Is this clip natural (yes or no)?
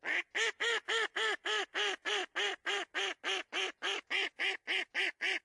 yes